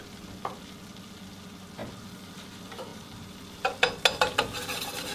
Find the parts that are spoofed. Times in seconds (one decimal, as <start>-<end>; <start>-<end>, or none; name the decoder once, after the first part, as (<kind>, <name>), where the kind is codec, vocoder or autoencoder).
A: none